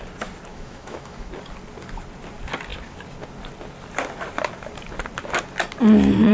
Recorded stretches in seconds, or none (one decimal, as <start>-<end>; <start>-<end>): 0.0-0.5; 1.3-6.3